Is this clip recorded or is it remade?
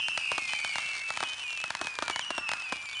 recorded